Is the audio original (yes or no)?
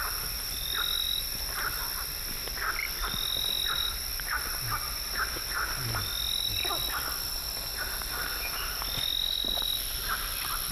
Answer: yes